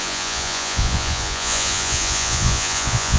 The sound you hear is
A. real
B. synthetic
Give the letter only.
B